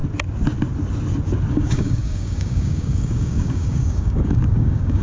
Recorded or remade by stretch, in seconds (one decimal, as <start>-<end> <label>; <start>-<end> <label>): 0.0-1.5 recorded; 1.5-5.0 remade